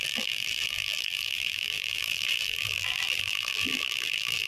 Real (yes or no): no